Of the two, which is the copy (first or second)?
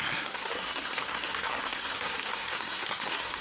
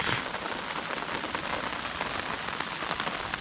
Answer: first